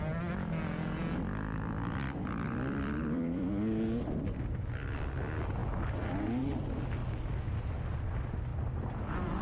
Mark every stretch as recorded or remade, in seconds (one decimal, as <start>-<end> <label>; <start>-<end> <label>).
0.0-1.0 recorded; 1.0-3.5 remade; 3.5-8.5 recorded; 8.5-9.4 remade